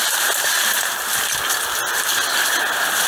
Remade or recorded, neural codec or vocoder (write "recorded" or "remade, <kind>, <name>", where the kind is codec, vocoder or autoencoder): recorded